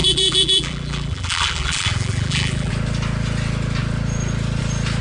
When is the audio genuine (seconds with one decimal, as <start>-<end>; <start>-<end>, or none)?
2.7-5.0